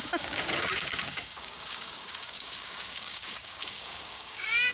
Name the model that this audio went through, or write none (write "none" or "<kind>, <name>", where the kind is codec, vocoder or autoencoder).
codec, DAC